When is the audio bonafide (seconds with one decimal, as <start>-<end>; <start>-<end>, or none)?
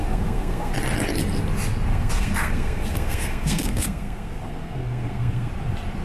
0.7-1.9; 5.5-6.0